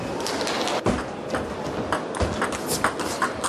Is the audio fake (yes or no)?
no